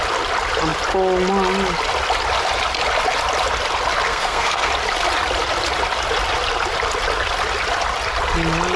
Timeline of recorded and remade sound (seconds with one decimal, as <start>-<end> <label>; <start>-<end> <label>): 0.0-4.1 recorded; 4.1-4.7 remade; 4.7-8.8 recorded